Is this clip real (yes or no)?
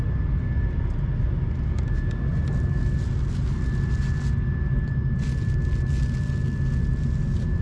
yes